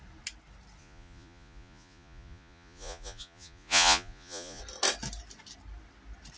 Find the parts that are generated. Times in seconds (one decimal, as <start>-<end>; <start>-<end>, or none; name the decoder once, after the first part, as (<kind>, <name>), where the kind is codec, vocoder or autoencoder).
0.8-4.6 (vocoder, Vocos)